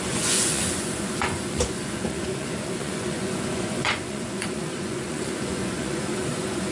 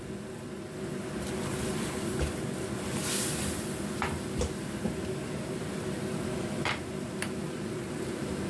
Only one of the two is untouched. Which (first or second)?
second